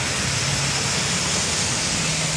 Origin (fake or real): real